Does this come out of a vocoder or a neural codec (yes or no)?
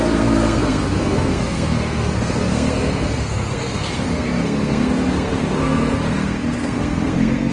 yes